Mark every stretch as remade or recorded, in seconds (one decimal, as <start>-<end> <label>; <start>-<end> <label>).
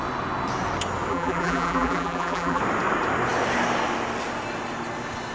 0.0-1.1 recorded; 1.1-2.6 remade; 2.6-5.3 recorded